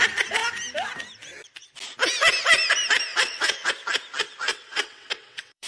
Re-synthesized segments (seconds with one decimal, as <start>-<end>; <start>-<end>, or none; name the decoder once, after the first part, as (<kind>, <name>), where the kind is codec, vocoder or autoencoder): 3.1-3.7 (vocoder, WaveNeXt); 4.5-5.7